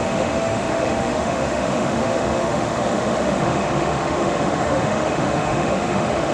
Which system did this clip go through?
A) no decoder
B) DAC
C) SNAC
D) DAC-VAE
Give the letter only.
D